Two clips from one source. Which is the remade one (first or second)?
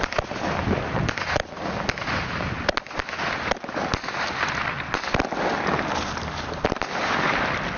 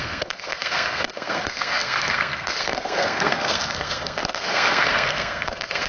second